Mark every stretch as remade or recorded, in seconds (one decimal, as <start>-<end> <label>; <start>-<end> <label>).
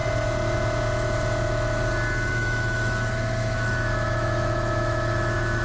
0.0-2.3 recorded; 2.3-5.6 remade